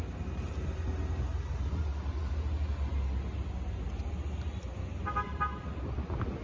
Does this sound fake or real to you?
real